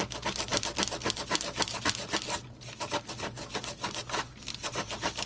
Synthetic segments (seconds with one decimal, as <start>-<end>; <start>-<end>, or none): none